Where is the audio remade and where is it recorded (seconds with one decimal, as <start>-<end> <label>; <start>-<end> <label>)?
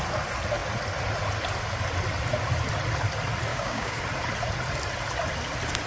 0.0-3.5 recorded; 3.5-4.0 remade; 4.0-5.9 recorded